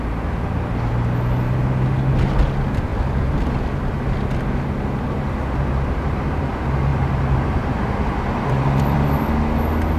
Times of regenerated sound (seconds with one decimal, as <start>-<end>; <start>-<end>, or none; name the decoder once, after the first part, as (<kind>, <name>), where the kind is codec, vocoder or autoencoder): 6.9-9.3 (vocoder, BigVGAN v2)